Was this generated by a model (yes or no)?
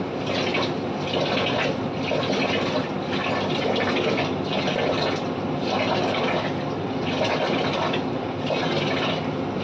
no